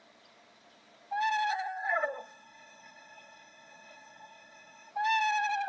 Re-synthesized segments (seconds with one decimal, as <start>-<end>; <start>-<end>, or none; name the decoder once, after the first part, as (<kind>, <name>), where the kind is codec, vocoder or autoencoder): 1.5-4.9 (codec, SNAC)